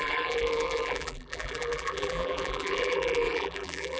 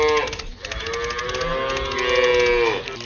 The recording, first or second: second